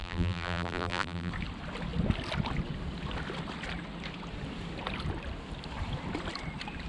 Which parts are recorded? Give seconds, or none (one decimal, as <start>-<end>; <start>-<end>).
1.3-6.9